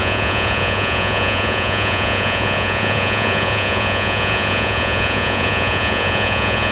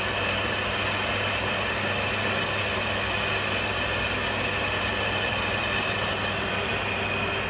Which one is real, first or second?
second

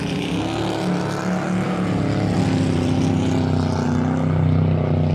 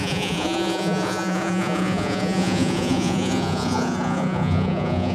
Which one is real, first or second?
first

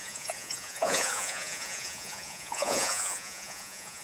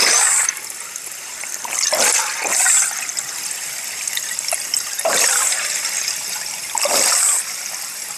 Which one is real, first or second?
second